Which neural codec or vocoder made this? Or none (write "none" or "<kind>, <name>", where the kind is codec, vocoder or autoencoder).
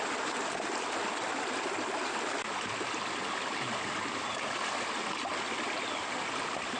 none